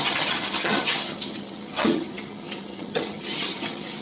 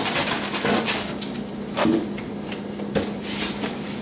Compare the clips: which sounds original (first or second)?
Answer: second